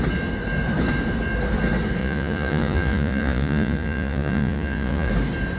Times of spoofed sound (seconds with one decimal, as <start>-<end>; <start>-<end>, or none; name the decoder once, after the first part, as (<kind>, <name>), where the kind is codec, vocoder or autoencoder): 2.0-5.1 (vocoder, Vocos)